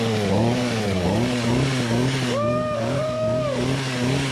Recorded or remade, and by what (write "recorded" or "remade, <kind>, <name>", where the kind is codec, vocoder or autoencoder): remade, codec, DAC